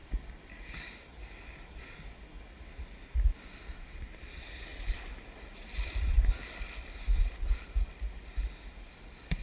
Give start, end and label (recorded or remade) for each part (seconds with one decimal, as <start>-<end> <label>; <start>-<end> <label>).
0.0-4.7 recorded; 4.7-7.9 remade; 7.9-9.4 recorded